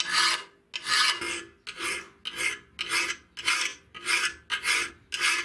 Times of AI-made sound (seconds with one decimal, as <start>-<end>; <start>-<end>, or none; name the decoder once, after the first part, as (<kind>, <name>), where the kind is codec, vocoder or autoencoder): none